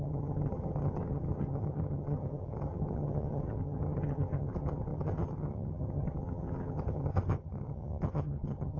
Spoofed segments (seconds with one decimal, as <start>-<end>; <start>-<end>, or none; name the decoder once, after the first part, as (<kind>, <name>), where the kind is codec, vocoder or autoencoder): 0.0-8.8 (vocoder, HiFi-GAN)